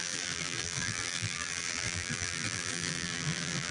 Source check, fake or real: fake